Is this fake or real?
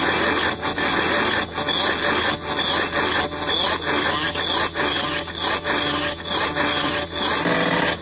real